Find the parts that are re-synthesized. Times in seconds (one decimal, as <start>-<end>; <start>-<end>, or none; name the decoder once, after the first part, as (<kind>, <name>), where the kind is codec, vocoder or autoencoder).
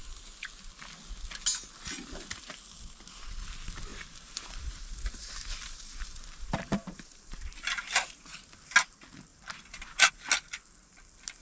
3.9-8.2 (vocoder, BigVGAN v2); 9.3-10.1